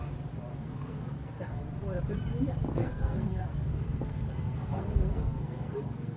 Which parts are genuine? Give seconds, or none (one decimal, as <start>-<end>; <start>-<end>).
0.0-0.5; 1.6-2.8